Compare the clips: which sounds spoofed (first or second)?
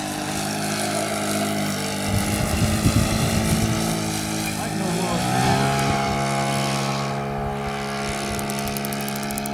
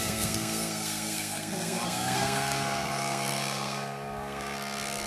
second